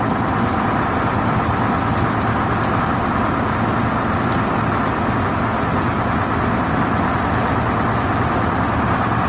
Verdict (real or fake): real